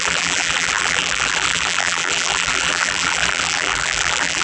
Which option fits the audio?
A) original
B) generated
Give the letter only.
B